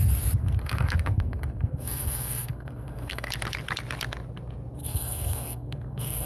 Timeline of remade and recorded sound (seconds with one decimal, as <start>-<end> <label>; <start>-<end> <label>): 0.0-0.4 recorded; 0.4-3.3 remade; 3.3-4.8 recorded; 4.8-6.3 remade

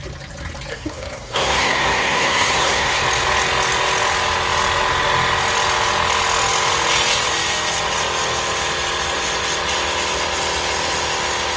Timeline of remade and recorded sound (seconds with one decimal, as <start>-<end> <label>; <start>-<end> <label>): 0.0-0.7 recorded; 0.7-3.0 remade; 3.0-11.6 recorded

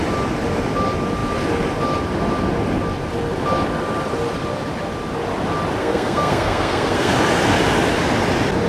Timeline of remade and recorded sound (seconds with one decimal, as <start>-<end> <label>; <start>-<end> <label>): 0.0-5.8 recorded; 5.8-7.1 remade; 7.1-8.7 recorded

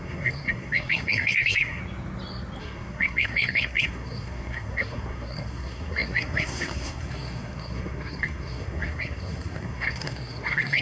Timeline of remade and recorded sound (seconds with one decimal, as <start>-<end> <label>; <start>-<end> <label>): 0.0-1.8 remade; 1.8-2.6 recorded; 2.6-10.8 remade